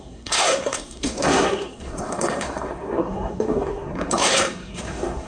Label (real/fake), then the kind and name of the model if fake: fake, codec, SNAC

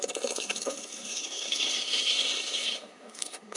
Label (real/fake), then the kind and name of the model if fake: fake, codec, SNAC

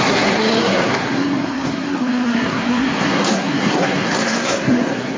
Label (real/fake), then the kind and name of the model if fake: fake, codec, SNAC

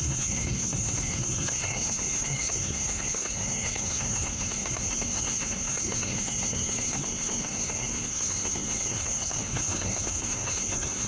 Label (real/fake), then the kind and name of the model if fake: fake, codec, SNAC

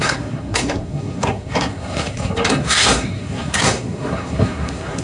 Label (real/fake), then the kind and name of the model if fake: fake, codec, SNAC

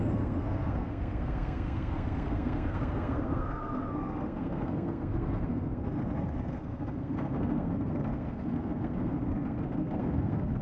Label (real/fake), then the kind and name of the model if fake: fake, codec, SNAC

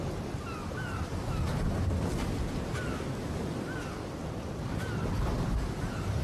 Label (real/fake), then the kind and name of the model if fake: real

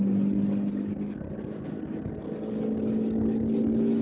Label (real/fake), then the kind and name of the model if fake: real